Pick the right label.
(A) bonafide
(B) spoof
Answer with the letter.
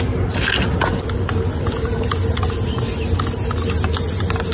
A